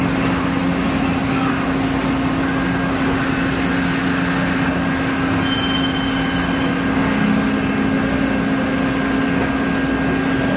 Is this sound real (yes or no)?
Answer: yes